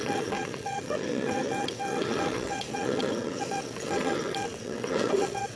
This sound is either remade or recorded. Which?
remade